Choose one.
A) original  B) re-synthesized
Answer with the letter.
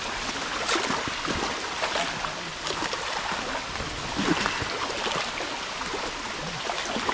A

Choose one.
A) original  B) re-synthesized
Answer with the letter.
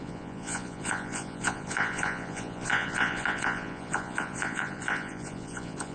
B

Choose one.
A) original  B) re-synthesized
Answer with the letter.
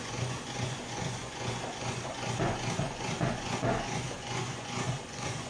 B